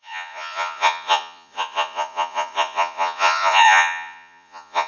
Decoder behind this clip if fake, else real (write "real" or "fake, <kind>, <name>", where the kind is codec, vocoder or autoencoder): fake, vocoder, Vocos